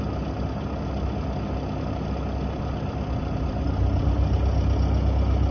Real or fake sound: real